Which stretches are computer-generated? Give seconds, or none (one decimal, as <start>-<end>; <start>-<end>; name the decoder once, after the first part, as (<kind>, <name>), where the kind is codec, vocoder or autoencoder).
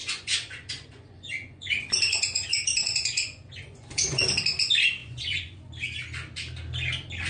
0.0-4.4 (vocoder, Vocos); 5.0-5.7